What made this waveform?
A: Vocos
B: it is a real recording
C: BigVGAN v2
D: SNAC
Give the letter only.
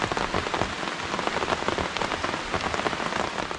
B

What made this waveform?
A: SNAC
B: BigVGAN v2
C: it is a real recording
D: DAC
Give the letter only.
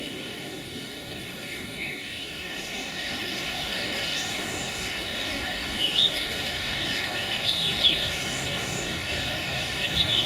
D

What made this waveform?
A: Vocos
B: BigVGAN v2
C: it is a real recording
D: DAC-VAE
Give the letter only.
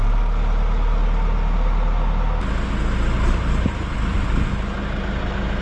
C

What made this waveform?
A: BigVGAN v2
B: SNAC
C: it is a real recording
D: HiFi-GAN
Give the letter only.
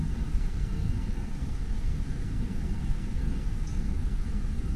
B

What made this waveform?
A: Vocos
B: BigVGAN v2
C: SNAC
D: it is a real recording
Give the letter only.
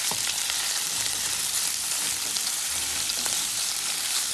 B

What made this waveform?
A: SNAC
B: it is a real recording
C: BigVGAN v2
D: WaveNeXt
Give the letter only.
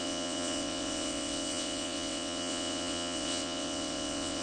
D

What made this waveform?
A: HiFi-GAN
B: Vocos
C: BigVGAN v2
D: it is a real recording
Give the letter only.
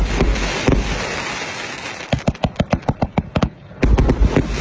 D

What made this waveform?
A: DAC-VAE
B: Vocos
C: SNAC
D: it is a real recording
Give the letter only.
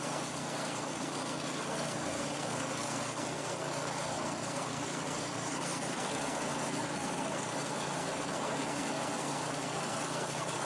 C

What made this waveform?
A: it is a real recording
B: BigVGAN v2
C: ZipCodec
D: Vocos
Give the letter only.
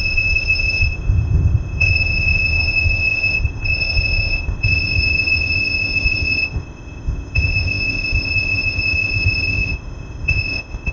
C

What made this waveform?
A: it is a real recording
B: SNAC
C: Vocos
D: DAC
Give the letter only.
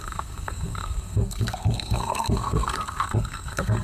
B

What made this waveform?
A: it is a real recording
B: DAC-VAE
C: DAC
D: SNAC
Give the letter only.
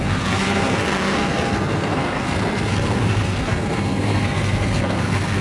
D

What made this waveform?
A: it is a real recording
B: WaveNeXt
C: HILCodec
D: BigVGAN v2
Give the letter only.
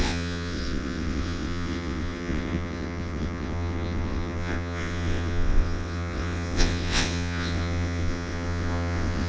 B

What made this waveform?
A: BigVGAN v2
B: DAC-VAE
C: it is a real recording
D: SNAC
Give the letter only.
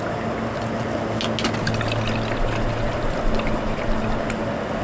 C